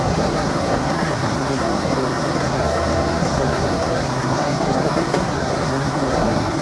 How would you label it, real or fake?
fake